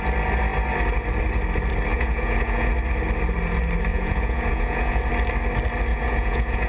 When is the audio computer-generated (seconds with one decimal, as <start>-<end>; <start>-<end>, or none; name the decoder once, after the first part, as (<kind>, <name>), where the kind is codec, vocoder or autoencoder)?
1.9-2.7 (vocoder, Vocos); 3.9-5.1; 5.9-6.7